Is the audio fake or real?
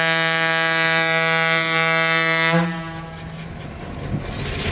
real